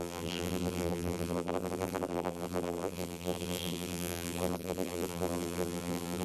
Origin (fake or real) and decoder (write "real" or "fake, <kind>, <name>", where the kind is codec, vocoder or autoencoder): fake, vocoder, BigVGAN v2